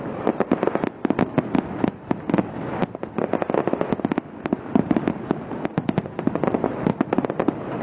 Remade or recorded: recorded